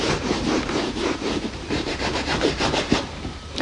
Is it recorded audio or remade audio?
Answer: remade